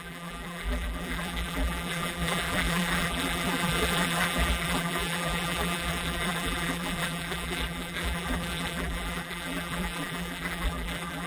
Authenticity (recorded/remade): remade